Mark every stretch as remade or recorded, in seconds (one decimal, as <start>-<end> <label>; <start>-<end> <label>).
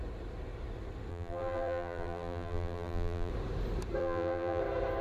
0.0-1.1 recorded; 1.1-3.3 remade; 3.3-4.0 recorded; 4.0-4.6 remade; 4.6-5.0 recorded